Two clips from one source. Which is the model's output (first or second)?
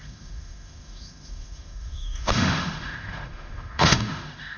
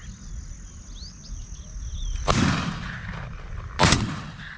first